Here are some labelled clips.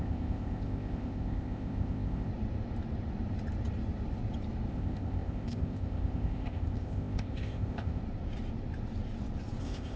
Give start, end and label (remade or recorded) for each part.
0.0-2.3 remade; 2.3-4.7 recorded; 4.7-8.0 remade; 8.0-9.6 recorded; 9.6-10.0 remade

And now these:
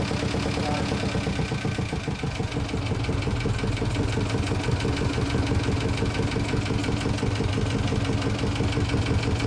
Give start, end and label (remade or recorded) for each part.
0.0-9.5 recorded

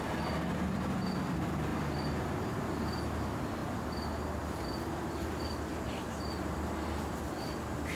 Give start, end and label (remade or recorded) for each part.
0.0-8.0 recorded

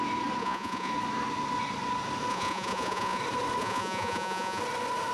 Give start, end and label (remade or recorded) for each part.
0.0-0.4 recorded; 0.4-0.9 remade; 0.9-2.3 recorded; 2.3-3.2 remade; 3.2-3.6 recorded; 3.6-4.6 remade; 4.6-5.1 recorded

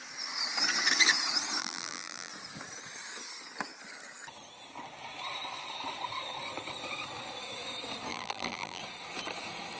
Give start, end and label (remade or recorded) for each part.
0.0-1.6 recorded; 1.6-2.3 remade; 2.3-8.1 recorded; 8.1-8.8 remade; 8.8-9.8 recorded

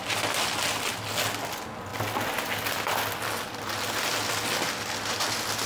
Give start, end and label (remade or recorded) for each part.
0.0-5.7 recorded

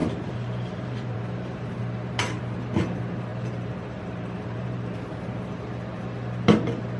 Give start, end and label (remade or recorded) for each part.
0.0-2.4 remade; 2.4-3.3 recorded; 3.3-5.5 remade; 5.5-7.0 recorded

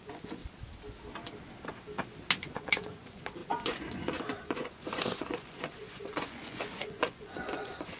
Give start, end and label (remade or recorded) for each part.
0.0-0.4 remade; 0.4-2.4 recorded; 2.4-8.0 remade